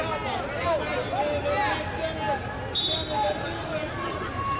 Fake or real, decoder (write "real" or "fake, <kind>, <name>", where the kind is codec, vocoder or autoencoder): real